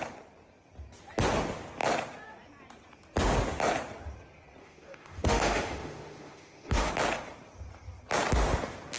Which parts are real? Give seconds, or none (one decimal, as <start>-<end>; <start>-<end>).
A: 0.0-4.6; 6.9-9.0